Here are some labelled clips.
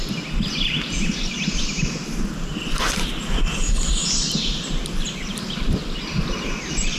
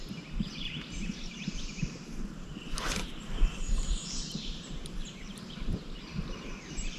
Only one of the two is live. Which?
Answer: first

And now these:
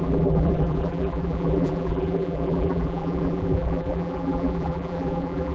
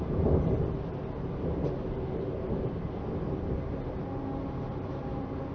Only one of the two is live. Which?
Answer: second